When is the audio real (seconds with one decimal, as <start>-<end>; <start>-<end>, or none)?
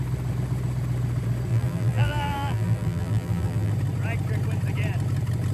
0.0-1.5; 3.7-5.5